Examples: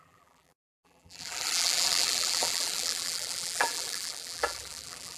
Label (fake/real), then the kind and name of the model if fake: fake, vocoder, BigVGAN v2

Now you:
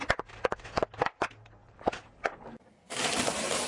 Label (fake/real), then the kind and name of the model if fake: real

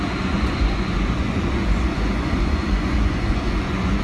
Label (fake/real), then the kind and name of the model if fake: fake, vocoder, Vocos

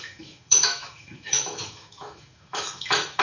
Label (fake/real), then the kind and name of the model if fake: fake, autoencoder, DAC-VAE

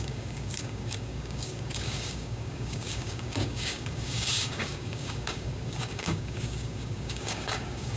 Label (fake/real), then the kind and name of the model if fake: fake, codec, DAC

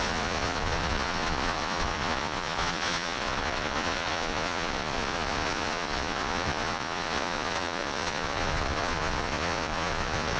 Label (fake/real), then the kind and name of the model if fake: fake, vocoder, Vocos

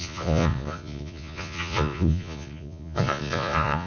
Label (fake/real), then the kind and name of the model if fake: fake, vocoder, Vocos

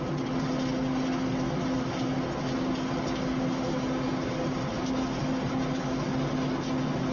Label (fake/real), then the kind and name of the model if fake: real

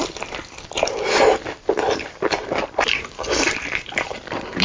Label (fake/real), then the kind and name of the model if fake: fake, vocoder, BigVGAN v2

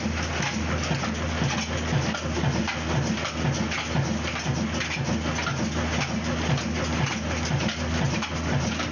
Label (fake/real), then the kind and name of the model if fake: real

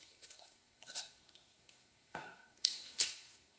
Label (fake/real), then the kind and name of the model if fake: fake, codec, SNAC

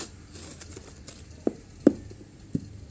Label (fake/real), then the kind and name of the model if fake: real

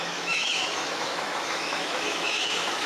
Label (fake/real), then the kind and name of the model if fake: fake, autoencoder, DAC-VAE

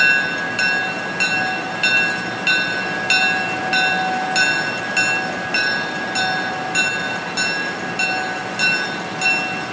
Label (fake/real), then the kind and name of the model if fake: real